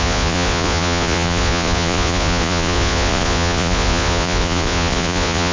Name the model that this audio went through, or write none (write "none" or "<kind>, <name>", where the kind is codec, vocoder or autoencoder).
vocoder, Vocos